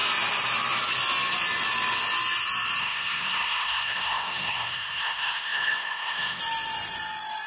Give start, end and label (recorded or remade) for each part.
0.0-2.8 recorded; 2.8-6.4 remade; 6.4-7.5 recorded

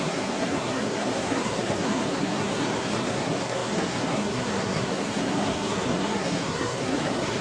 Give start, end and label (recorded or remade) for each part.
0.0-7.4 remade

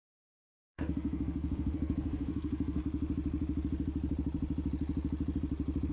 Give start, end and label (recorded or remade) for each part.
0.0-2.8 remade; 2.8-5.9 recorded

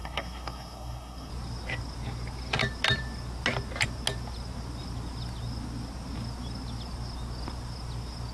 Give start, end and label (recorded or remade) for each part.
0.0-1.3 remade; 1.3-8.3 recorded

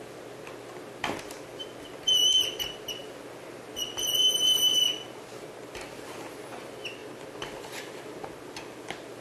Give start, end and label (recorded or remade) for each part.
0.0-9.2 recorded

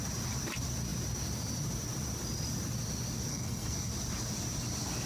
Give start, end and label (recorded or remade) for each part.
0.0-3.3 recorded; 3.3-3.9 remade; 3.9-5.1 recorded

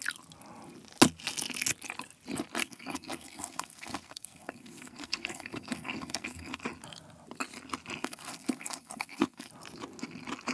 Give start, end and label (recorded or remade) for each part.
0.0-2.6 recorded; 2.6-6.6 remade; 6.6-8.0 recorded; 8.0-9.5 remade; 9.5-10.5 recorded

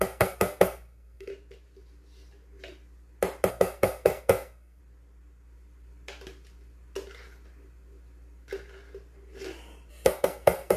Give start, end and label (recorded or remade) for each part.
0.0-1.3 remade; 1.3-3.5 recorded; 3.5-4.8 remade; 4.8-9.9 recorded; 9.9-10.8 remade